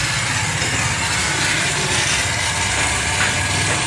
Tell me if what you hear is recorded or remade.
recorded